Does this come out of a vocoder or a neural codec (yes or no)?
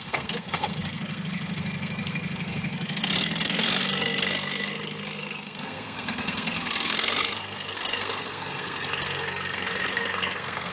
yes